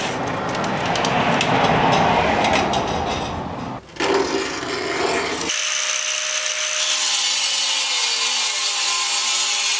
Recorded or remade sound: recorded